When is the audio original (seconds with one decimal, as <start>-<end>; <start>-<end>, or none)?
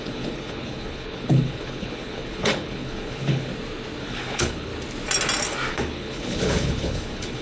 3.5-4.0; 4.7-5.7